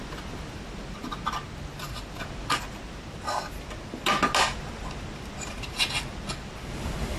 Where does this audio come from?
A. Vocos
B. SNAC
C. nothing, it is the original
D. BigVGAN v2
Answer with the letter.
C